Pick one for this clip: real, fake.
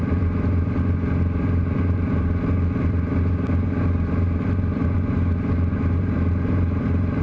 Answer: fake